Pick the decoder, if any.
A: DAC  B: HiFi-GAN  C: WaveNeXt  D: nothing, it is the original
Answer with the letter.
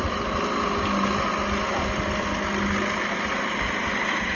D